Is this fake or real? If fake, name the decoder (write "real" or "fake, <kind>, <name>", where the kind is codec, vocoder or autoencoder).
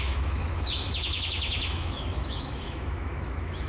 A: fake, autoencoder, DAC-VAE